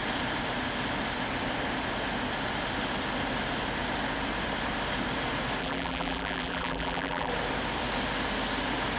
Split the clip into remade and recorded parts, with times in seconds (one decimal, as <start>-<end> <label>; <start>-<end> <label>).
0.0-5.6 recorded; 5.6-7.3 remade; 7.3-9.0 recorded